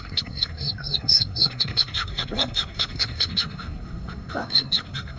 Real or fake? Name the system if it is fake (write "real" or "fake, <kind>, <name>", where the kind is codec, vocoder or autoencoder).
fake, codec, SNAC